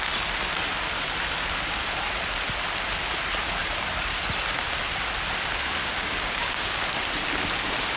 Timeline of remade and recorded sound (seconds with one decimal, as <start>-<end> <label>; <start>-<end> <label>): 0.0-5.8 recorded; 5.8-6.8 remade; 6.8-8.0 recorded

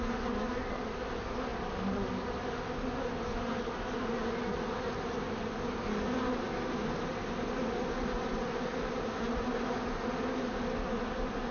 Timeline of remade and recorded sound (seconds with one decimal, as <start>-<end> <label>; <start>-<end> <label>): 0.0-11.5 recorded